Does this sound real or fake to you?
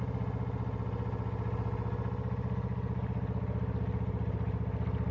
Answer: real